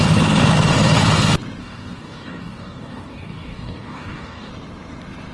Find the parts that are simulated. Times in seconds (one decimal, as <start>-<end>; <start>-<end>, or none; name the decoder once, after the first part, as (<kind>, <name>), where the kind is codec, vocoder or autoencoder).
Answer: 1.6-4.5 (codec, DAC)